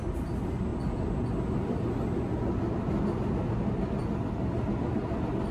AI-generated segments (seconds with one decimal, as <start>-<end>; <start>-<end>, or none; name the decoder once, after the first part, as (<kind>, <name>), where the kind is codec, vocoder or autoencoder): none